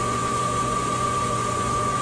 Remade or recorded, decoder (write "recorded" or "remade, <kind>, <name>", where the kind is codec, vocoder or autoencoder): remade, vocoder, Vocos